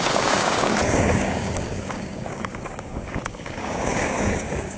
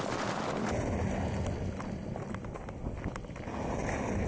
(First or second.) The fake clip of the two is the first